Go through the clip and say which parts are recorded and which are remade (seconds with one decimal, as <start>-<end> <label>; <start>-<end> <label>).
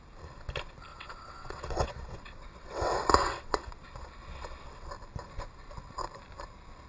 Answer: 0.0-0.9 recorded; 0.9-4.9 remade; 4.9-6.9 recorded